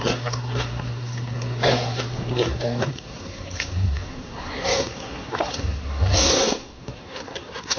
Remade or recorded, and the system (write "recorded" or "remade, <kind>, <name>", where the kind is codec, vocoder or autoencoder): remade, codec, SNAC